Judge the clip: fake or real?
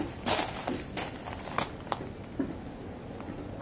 real